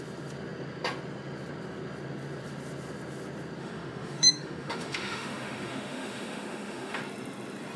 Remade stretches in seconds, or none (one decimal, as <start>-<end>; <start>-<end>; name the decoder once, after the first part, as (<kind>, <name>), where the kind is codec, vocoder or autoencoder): 3.6-7.0 (autoencoder, DAC-VAE)